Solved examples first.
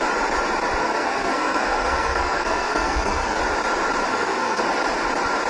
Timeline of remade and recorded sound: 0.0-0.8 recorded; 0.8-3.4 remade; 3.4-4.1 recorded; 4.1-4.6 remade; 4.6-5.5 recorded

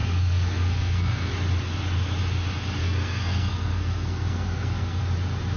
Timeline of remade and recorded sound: 0.0-1.3 remade; 1.3-2.8 recorded; 2.8-5.0 remade; 5.0-5.6 recorded

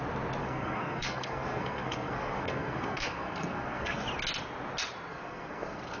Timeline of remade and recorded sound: 0.0-0.4 recorded; 0.4-4.0 remade; 4.0-5.1 recorded; 5.1-6.0 remade